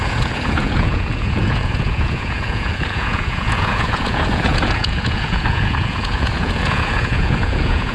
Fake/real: fake